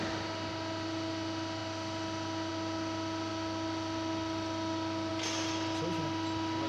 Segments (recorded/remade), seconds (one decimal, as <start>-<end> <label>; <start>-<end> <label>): 0.0-6.7 recorded